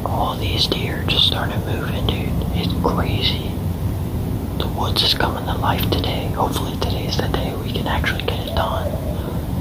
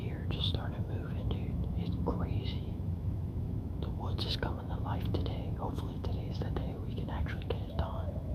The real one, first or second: first